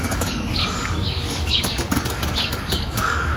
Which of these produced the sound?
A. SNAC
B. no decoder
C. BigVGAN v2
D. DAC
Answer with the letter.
D